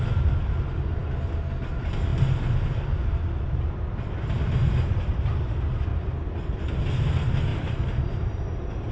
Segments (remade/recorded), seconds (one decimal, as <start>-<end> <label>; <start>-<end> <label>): 0.0-7.5 recorded; 7.5-8.9 remade